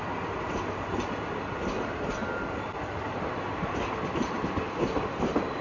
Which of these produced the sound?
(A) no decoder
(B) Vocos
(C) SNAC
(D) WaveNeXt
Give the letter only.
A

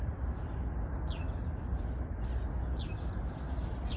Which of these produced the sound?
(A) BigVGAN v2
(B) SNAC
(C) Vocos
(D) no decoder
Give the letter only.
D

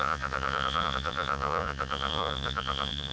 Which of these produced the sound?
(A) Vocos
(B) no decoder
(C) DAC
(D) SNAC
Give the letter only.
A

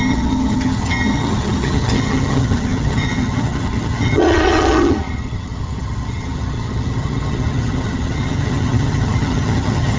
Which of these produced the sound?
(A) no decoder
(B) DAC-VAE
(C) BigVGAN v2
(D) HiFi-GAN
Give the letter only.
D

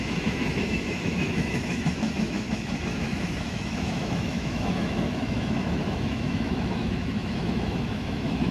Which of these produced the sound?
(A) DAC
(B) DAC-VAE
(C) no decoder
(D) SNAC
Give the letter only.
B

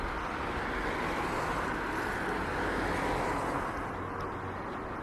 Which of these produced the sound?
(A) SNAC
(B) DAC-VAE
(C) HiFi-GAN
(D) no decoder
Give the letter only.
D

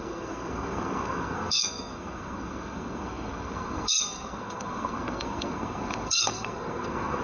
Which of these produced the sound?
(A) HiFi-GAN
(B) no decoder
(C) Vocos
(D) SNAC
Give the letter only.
D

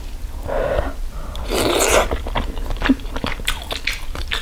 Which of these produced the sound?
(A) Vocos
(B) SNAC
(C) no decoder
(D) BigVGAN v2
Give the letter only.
C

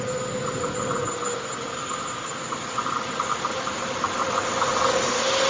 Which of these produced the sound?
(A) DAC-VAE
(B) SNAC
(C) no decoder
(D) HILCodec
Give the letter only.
C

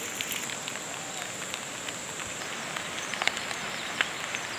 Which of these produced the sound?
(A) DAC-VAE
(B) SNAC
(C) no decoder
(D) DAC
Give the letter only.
C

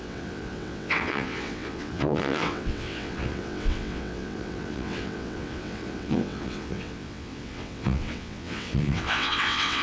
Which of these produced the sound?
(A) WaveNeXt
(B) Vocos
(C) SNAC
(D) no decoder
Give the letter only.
A